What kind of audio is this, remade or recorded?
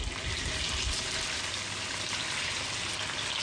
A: recorded